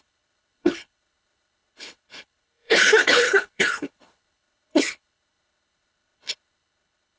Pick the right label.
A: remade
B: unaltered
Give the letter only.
A